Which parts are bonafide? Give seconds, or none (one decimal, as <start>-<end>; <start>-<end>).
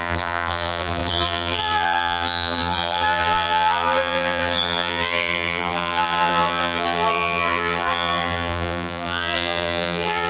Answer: none